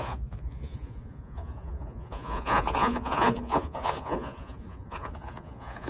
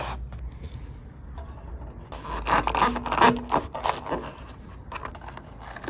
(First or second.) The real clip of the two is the second